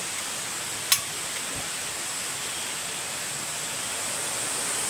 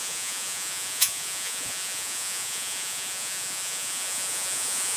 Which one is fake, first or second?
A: second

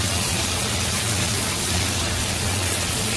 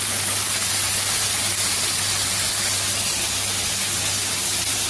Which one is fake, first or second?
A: first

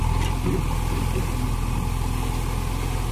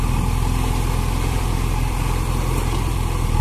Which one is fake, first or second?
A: second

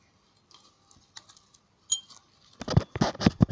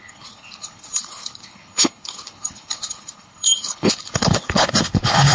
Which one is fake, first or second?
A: second